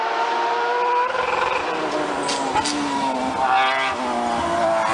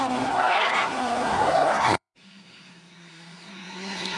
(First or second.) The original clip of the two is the first